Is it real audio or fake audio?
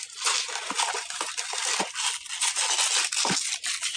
real